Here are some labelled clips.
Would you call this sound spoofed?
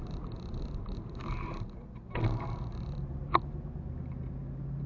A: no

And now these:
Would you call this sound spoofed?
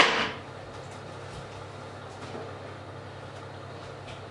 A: no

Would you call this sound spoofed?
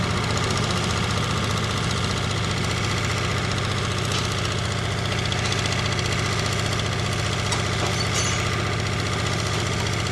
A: no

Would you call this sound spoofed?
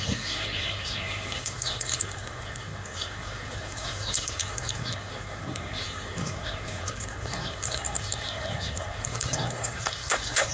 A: yes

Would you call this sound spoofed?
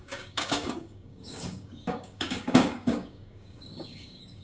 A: yes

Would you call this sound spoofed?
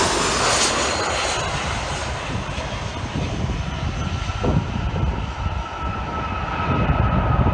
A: no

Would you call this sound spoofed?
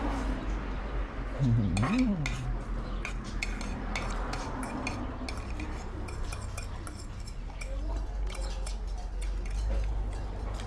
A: no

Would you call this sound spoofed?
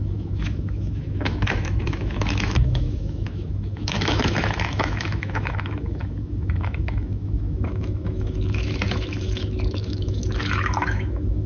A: yes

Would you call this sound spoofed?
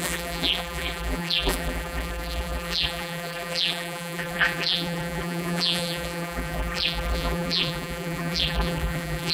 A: yes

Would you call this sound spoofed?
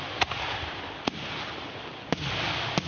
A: no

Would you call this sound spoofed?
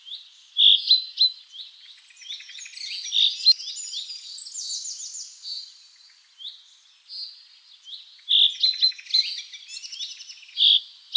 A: no